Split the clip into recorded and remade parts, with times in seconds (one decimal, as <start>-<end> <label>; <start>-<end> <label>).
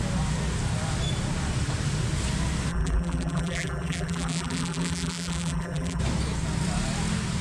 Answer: 0.0-2.7 recorded; 2.7-6.0 remade; 6.0-7.4 recorded